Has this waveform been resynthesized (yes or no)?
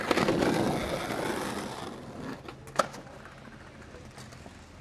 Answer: no